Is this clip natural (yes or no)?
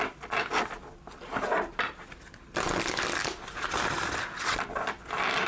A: yes